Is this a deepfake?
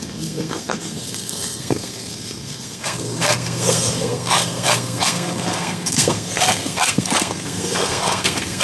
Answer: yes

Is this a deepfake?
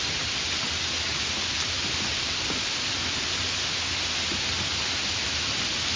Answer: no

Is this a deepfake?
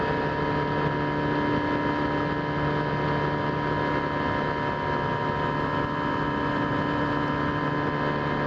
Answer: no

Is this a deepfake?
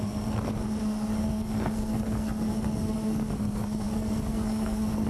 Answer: yes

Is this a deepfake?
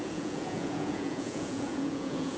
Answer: yes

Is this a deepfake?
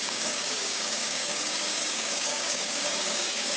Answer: yes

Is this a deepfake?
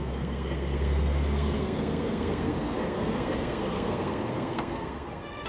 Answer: yes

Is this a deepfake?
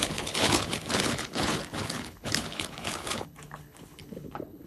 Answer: yes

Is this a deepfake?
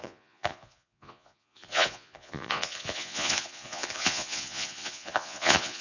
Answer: yes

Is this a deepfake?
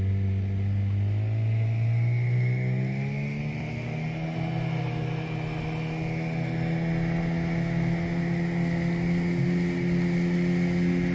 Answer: no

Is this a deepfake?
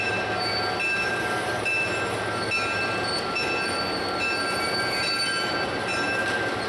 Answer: no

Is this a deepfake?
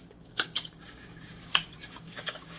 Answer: yes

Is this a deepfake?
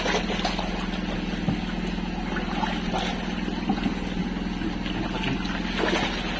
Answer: no